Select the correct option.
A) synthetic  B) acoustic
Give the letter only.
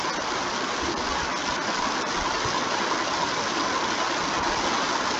B